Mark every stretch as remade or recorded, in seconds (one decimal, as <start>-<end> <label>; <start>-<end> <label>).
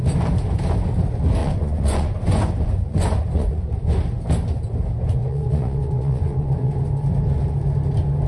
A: 0.0-1.4 recorded; 1.4-3.7 remade; 3.7-5.2 recorded; 5.2-6.8 remade; 6.8-8.3 recorded